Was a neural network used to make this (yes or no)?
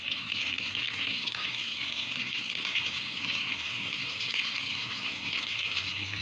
yes